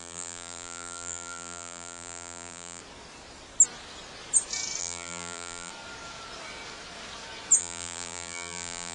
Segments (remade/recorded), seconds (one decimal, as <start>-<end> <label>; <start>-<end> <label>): 0.0-2.8 remade; 2.8-4.8 recorded; 4.8-5.7 remade; 5.7-7.6 recorded; 7.6-8.9 remade